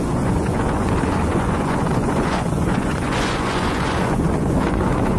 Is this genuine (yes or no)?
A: no